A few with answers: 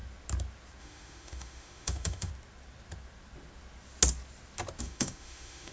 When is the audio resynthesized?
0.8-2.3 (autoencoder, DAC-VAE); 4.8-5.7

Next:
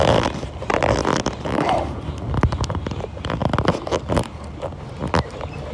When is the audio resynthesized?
none

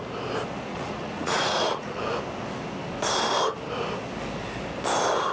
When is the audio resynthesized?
0.7-2.0 (vocoder, Vocos)

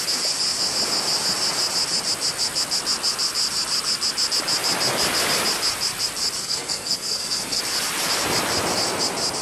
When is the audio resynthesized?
6.4-7.6 (codec, SNAC)

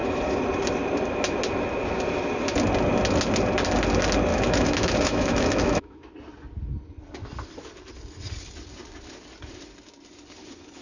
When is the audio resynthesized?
4.3-6.1 (autoencoder, DAC-VAE)

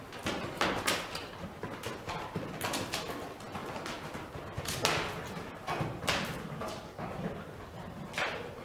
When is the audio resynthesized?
3.6-4.3 (vocoder, BigVGAN v2)

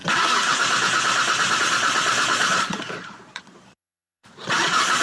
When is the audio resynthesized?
1.6-5.0 (vocoder, Vocos)